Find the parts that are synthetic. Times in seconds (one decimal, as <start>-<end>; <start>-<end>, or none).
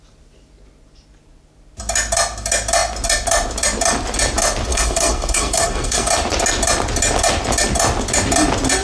4.7-6.1